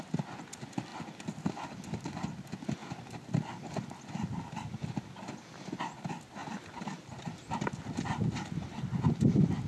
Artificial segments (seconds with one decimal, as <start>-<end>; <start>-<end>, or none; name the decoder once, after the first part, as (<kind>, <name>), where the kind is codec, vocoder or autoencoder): none